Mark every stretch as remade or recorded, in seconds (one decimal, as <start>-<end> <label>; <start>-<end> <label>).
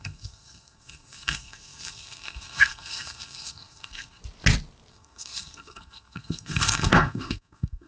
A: 0.0-4.2 remade; 4.2-4.9 recorded; 4.9-7.9 remade